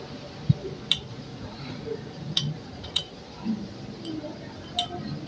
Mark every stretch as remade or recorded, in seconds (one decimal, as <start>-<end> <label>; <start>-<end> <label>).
0.0-1.1 recorded; 1.1-3.2 remade; 3.2-5.3 recorded